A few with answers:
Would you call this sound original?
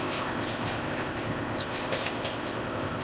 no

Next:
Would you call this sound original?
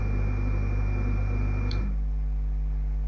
yes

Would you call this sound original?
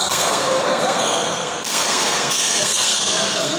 no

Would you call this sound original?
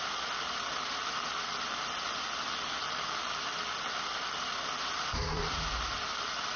no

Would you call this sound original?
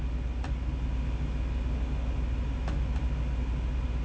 yes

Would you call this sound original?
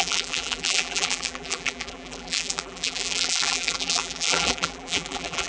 no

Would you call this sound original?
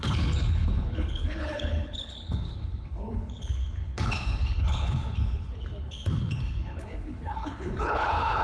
no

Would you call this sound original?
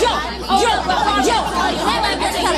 no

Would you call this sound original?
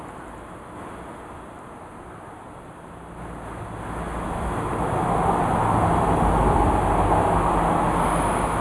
yes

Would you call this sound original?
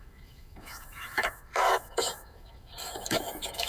no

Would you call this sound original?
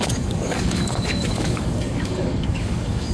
no